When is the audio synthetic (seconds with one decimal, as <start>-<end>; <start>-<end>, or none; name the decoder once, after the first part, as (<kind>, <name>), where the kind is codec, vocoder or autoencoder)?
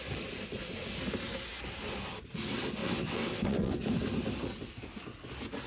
2.8-3.7 (vocoder, WaveNeXt)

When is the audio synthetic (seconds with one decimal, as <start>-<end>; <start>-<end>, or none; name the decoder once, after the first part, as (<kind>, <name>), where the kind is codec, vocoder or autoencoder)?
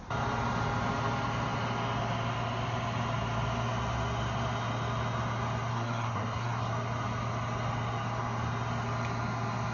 5.7-6.7 (codec, SNAC)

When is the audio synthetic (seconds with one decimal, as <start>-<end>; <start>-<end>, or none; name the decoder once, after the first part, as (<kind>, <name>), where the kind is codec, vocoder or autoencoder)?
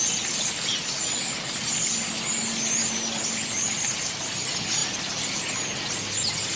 none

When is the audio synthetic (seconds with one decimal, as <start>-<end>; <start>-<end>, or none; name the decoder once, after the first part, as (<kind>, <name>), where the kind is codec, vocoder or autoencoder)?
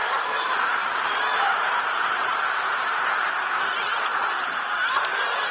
0.0-3.3 (vocoder, BigVGAN v2); 4.1-5.0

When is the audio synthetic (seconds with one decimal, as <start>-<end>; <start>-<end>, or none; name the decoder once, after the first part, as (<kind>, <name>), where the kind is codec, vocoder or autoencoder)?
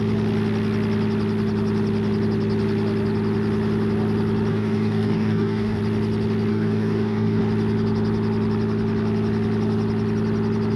4.5-5.8 (codec, DAC); 6.5-7.4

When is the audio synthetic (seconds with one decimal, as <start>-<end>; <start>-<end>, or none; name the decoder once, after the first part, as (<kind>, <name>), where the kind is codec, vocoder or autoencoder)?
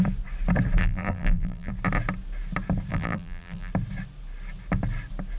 0.8-1.7 (vocoder, BigVGAN v2); 2.9-3.7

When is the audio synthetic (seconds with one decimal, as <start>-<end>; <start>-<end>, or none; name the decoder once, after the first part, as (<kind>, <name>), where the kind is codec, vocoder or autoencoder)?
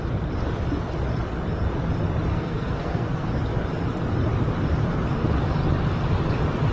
2.3-3.3 (codec, SNAC)